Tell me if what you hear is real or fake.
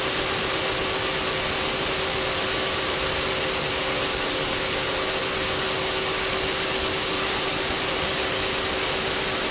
real